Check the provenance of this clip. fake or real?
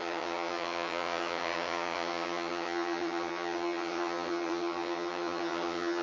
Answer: fake